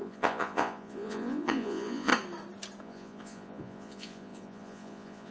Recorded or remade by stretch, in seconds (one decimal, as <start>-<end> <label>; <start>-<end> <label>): 0.0-2.1 remade; 2.1-2.8 recorded; 2.8-5.3 remade